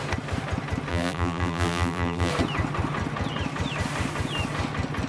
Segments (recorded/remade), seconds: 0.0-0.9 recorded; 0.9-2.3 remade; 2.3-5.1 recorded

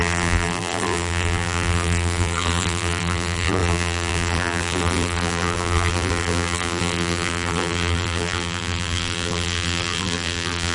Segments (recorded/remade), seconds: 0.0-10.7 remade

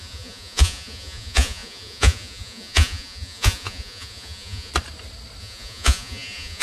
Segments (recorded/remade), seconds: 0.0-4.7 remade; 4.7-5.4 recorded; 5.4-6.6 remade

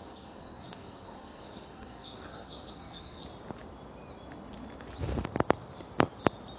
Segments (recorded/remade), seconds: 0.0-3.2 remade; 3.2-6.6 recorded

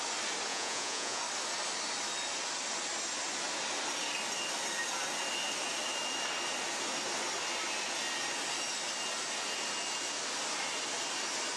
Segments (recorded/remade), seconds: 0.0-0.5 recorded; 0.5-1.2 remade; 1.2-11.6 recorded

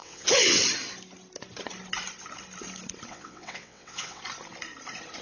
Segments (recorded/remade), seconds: 0.0-0.6 remade; 0.6-3.1 recorded; 3.1-4.2 remade; 4.2-5.2 recorded

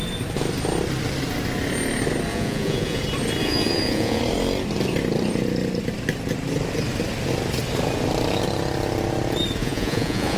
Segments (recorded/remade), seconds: 0.0-2.3 recorded; 2.3-3.0 remade; 3.0-3.4 recorded; 3.4-4.2 remade; 4.2-9.6 recorded; 9.6-10.4 remade

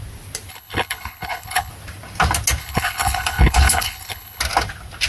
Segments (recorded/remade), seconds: 0.0-0.5 recorded; 0.5-1.7 remade; 1.7-2.6 recorded; 2.6-4.4 remade; 4.4-5.1 recorded